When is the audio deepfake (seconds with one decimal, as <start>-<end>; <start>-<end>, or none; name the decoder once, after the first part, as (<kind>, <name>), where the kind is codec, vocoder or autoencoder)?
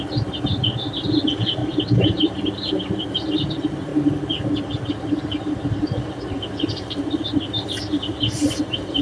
0.0-1.6 (vocoder, BigVGAN v2); 2.2-3.9; 5.0-9.0